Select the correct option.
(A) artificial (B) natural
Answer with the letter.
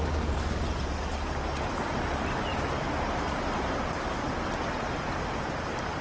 B